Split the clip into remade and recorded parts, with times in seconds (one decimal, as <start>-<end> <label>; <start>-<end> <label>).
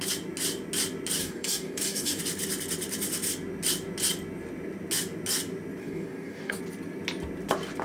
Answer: 0.0-1.2 recorded; 1.2-2.2 remade; 2.2-5.8 recorded; 5.8-6.6 remade; 6.6-7.8 recorded